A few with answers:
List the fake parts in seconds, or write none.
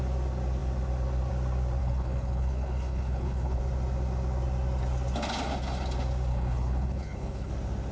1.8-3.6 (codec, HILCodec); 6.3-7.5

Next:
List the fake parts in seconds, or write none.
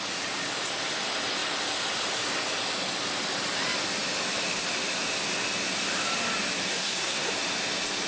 6.7-7.3 (codec, SNAC)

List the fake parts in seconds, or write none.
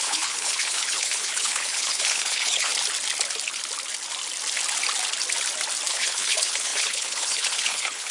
0.0-2.7 (codec, HILCodec); 5.9-8.1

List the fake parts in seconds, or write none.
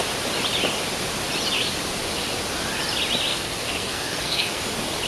3.3-4.6 (codec, SNAC)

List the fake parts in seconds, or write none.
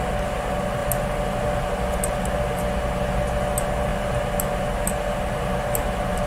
none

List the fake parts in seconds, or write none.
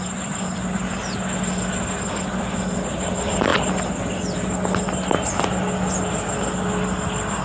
none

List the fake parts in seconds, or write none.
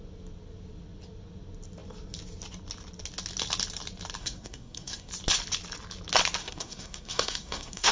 4.2-5.1 (codec, SNAC); 6.4-7.9